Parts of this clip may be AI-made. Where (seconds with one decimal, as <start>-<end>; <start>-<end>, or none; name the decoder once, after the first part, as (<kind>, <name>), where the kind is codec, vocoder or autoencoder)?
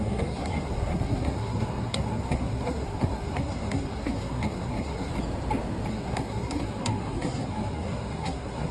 0.0-5.1 (codec, SNAC); 5.9-8.7